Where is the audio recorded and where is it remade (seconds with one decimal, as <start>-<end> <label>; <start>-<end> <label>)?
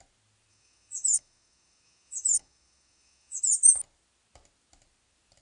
0.0-0.5 recorded; 0.5-3.4 remade; 3.4-5.4 recorded